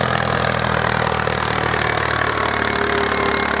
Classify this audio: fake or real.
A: real